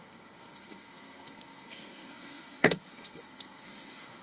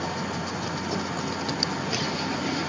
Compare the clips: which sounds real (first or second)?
second